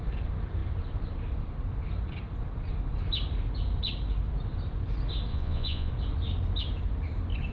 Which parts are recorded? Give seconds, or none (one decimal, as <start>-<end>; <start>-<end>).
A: 0.0-5.3; 5.9-7.5